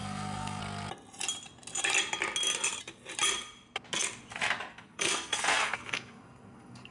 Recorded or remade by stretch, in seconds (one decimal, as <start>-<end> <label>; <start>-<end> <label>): 0.0-0.6 remade; 0.6-4.7 recorded; 4.7-6.9 remade